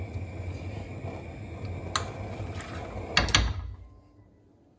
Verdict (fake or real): real